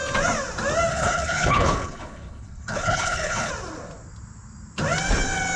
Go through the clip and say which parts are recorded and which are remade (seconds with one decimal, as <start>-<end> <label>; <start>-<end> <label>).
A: 0.0-0.9 recorded; 0.9-3.5 remade; 3.5-5.6 recorded

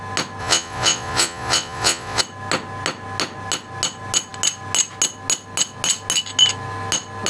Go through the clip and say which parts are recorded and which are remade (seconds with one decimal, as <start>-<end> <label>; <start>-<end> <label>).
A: 0.0-0.4 recorded; 0.4-2.2 remade; 2.2-7.3 recorded